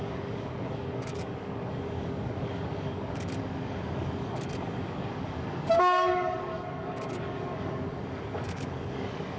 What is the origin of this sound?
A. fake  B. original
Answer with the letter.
A